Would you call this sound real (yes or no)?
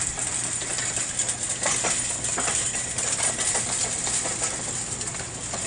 yes